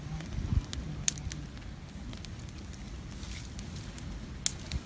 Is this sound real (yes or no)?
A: yes